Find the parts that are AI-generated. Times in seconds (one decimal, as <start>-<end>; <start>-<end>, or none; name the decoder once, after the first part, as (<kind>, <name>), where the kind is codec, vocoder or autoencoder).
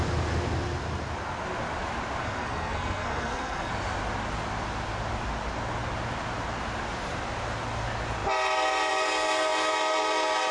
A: 2.2-3.7 (codec, SNAC)